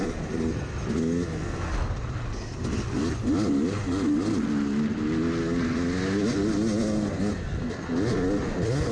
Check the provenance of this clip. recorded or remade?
recorded